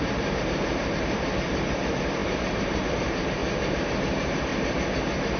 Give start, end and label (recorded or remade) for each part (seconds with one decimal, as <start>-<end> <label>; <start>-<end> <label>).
0.0-3.4 remade; 3.4-3.9 recorded; 3.9-4.5 remade; 4.5-5.4 recorded